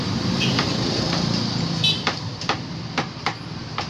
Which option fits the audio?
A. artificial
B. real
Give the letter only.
A